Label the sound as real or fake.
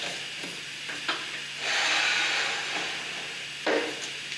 real